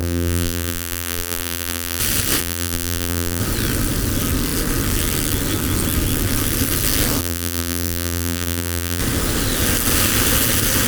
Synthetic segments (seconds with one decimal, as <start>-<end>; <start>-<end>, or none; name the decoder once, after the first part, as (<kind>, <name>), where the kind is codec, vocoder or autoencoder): 0.0-2.0 (vocoder, BigVGAN v2); 2.4-3.4; 7.2-9.0